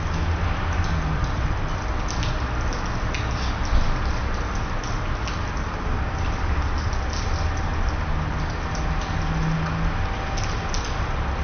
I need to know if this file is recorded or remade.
recorded